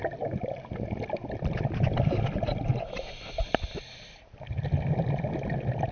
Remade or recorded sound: recorded